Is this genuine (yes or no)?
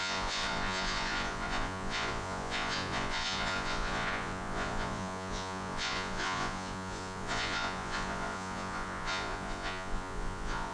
no